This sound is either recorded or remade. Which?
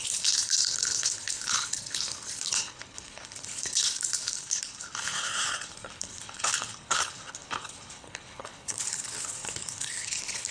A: remade